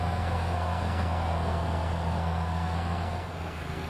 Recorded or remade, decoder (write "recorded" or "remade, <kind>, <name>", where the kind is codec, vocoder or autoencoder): remade, codec, SNAC